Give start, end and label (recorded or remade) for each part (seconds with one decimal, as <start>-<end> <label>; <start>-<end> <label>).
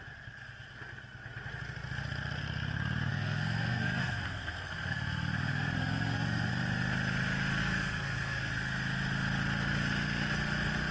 0.0-3.1 recorded; 3.1-6.5 remade; 6.5-7.6 recorded; 7.6-8.5 remade; 8.5-10.9 recorded